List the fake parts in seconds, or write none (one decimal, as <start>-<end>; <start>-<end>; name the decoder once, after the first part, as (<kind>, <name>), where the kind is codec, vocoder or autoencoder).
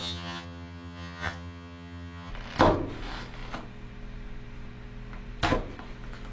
0.0-2.3 (vocoder, HiFi-GAN)